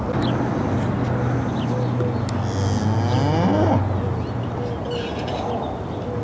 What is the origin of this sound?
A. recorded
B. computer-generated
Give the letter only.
A